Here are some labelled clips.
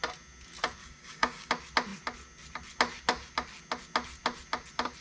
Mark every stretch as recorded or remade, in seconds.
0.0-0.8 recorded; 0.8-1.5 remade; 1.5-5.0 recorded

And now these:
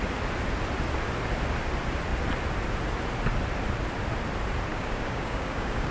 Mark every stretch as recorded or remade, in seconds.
0.0-4.7 recorded; 4.7-5.9 remade

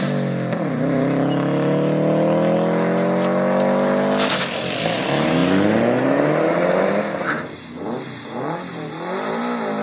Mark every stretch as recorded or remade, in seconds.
0.0-9.8 recorded

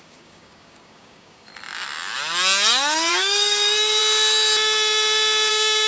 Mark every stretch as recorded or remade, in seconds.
0.0-1.5 remade; 1.5-3.1 recorded; 3.1-4.0 remade; 4.0-5.5 recorded; 5.5-5.9 remade